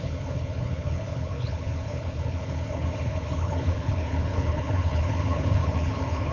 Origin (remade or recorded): remade